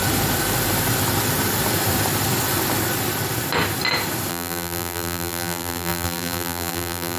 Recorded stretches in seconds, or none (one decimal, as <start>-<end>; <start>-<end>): 0.0-4.3